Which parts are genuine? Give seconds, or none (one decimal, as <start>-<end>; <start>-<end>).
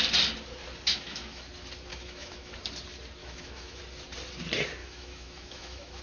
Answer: 0.0-0.9; 1.5-1.9; 2.5-3.2; 3.8-4.8